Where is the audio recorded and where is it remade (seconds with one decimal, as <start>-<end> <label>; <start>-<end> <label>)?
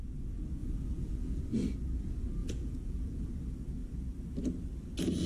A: 0.0-0.6 recorded; 0.6-1.4 remade; 1.4-2.4 recorded; 2.4-3.3 remade; 3.3-5.3 recorded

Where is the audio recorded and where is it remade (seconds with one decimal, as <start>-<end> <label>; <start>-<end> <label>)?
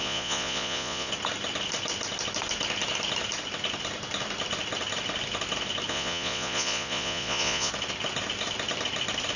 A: 0.0-1.1 remade; 1.1-5.9 recorded; 5.9-7.7 remade; 7.7-9.4 recorded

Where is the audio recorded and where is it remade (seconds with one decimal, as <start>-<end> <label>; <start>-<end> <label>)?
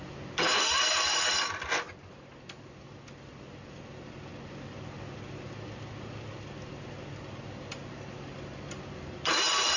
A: 0.0-9.8 recorded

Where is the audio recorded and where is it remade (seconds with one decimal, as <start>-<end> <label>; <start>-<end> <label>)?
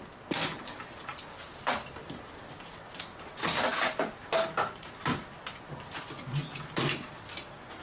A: 0.0-7.8 recorded